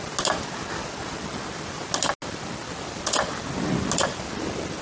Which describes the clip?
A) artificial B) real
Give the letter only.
B